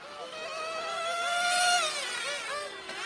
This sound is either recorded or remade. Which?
recorded